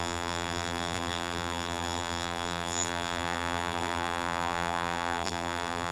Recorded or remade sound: remade